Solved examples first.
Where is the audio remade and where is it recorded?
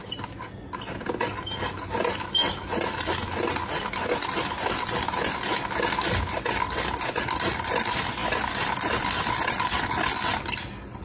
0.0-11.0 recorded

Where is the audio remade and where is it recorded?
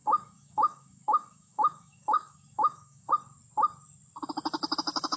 0.0-3.1 remade; 3.1-5.2 recorded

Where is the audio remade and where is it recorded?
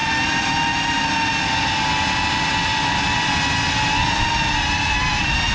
0.0-5.5 recorded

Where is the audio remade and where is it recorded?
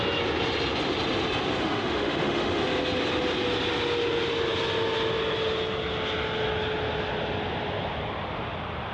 0.0-1.6 recorded; 1.6-2.6 remade; 2.6-8.9 recorded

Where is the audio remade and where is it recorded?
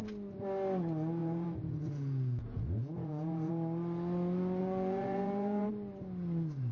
0.0-1.2 recorded; 1.2-3.5 remade; 3.5-4.6 recorded; 4.6-5.7 remade; 5.7-6.7 recorded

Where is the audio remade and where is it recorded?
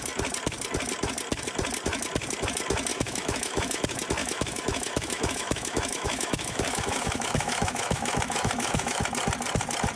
0.0-2.9 recorded; 2.9-3.8 remade; 3.8-4.2 recorded; 4.2-9.0 remade; 9.0-10.0 recorded